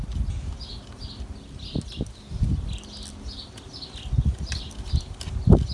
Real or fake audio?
real